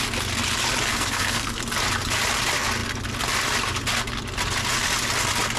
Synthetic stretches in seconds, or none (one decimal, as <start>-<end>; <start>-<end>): 0.9-1.6